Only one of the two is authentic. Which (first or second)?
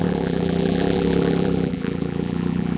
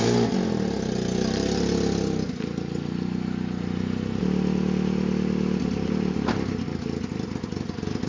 second